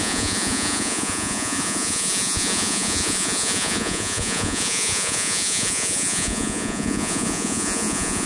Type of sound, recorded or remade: remade